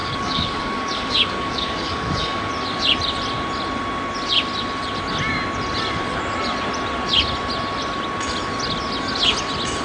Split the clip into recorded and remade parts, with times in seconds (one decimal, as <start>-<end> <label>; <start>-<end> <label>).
0.0-2.5 remade; 2.5-9.8 recorded